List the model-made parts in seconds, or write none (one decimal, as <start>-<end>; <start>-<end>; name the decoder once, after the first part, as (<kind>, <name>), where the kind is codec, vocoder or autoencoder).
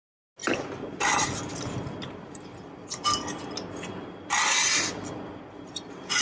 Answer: none